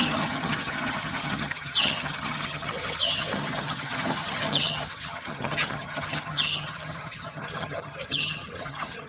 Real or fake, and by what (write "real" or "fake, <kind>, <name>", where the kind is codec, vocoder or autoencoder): fake, vocoder, HiFi-GAN